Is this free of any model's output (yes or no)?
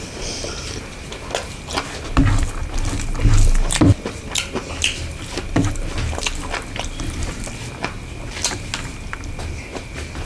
yes